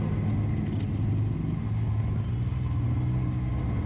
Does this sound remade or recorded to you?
recorded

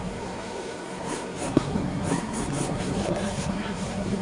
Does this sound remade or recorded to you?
remade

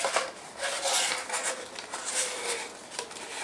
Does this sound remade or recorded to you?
recorded